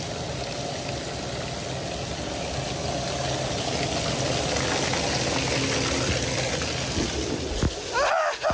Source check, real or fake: real